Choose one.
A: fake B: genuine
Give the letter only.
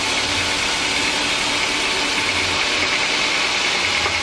B